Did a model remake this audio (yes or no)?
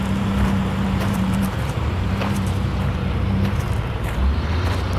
yes